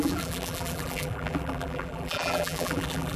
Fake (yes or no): yes